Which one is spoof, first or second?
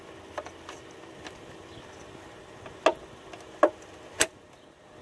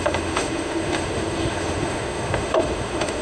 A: second